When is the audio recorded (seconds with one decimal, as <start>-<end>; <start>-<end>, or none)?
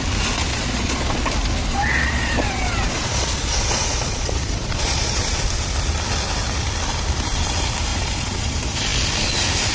0.0-0.5; 1.2-1.6; 5.4-7.9; 8.5-9.7